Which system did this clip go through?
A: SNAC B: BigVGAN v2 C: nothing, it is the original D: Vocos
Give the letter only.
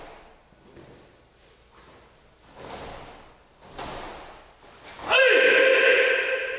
C